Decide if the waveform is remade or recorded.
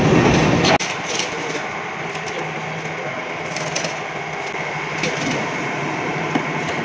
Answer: recorded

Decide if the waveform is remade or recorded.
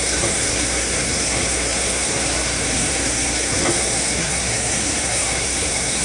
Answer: remade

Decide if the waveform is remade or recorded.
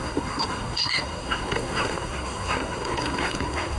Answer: remade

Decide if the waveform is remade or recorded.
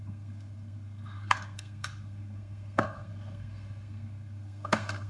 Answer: remade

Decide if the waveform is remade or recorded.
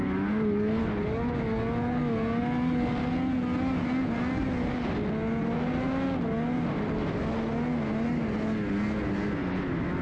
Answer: recorded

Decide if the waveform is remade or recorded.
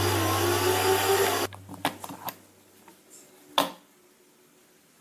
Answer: recorded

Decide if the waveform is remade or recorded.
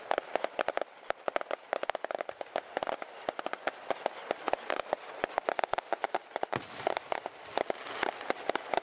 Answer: recorded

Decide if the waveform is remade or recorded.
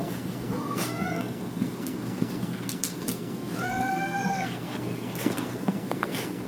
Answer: remade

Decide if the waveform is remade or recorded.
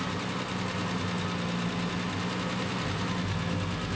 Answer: recorded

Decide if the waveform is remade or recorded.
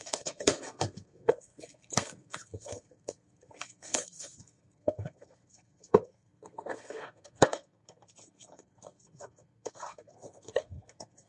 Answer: remade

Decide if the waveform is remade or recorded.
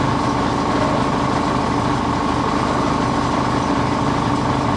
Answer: recorded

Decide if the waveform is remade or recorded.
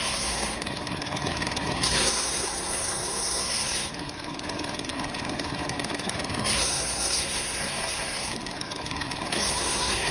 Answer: remade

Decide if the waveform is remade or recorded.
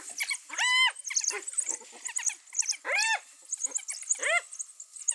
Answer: recorded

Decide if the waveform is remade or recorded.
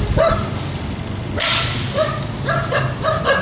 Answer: recorded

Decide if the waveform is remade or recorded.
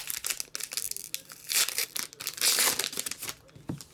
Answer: recorded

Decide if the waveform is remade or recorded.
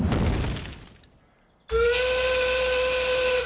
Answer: recorded